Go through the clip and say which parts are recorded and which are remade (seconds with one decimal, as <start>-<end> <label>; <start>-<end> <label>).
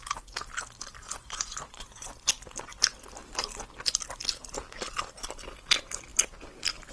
0.0-1.0 recorded; 1.0-2.1 remade; 2.1-6.9 recorded